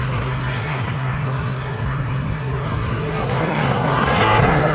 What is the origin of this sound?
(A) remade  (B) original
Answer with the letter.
A